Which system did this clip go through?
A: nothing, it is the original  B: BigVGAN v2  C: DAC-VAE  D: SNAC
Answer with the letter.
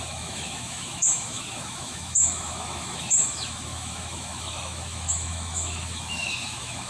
C